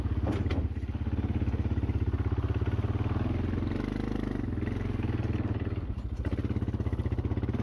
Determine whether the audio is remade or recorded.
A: recorded